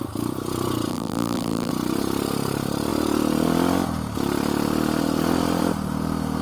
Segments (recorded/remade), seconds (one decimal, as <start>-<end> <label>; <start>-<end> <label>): 0.0-0.9 recorded; 0.9-1.7 remade; 1.7-6.4 recorded